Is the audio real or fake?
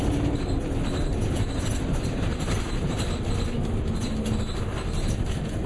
real